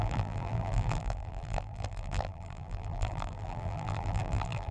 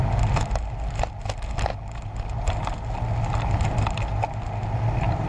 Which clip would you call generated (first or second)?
first